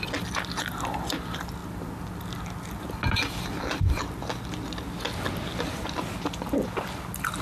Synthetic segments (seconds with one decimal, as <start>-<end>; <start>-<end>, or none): none